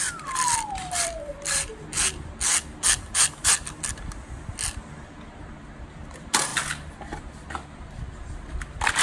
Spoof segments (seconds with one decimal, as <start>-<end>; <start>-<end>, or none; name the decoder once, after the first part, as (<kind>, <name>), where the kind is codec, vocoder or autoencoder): 0.0-1.7 (vocoder, BigVGAN v2); 6.1-6.5; 7.2-9.0